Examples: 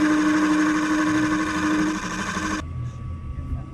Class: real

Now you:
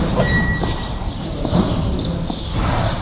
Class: real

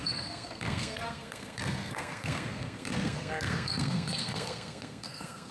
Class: fake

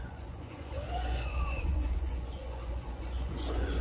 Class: fake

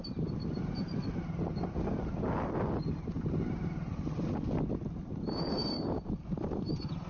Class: real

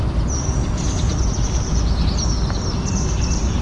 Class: real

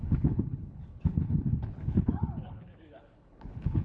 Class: fake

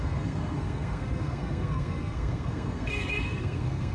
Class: fake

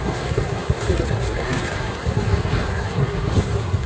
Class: fake